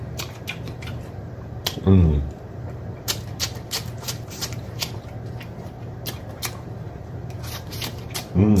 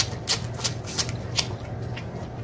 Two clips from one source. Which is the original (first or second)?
second